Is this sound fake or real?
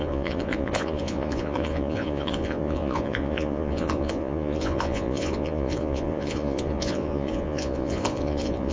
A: fake